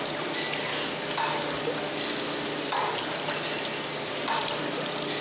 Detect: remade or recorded recorded